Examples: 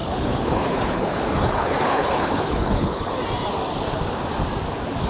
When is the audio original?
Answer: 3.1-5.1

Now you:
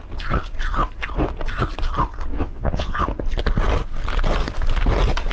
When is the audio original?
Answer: 0.0-2.3; 3.0-5.3

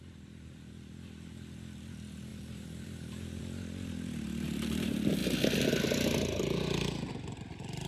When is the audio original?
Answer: 0.0-2.3; 3.4-7.9